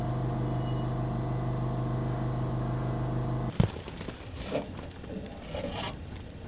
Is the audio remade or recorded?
recorded